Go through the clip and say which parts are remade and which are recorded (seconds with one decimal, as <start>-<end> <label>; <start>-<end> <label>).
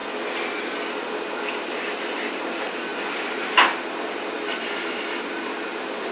0.0-1.6 recorded; 1.6-6.1 remade